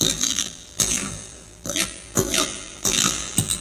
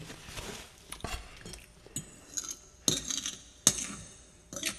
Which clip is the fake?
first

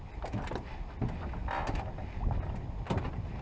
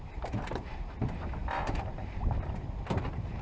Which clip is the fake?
second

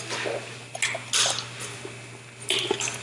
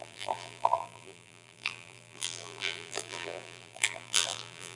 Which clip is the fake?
second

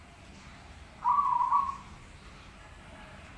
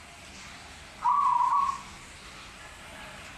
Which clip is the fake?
first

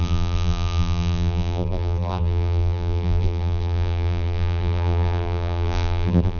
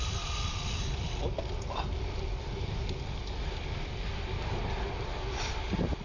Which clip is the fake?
first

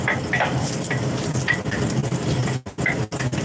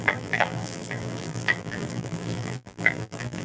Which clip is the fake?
second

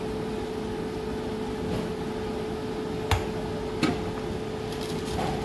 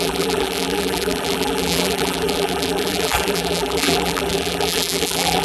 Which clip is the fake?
second